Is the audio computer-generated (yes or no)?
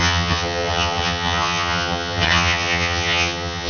yes